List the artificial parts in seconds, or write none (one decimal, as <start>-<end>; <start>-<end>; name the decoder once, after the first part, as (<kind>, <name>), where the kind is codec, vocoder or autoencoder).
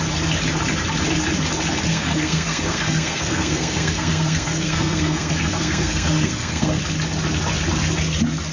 1.9-6.8 (codec, SNAC)